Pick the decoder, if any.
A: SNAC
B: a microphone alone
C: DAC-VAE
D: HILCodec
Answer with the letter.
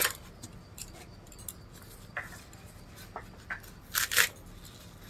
B